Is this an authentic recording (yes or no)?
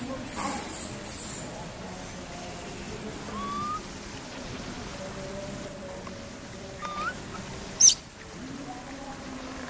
yes